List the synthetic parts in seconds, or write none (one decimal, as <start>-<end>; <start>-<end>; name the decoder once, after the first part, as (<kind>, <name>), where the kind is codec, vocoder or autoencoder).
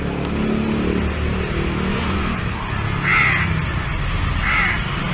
1.9-2.4 (vocoder, Vocos)